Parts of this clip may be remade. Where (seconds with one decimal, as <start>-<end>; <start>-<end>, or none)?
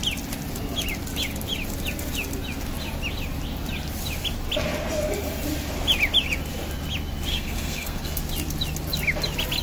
7.3-8.2